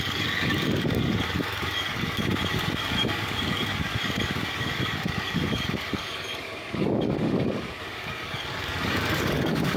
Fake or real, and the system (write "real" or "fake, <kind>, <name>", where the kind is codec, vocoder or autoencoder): fake, codec, DAC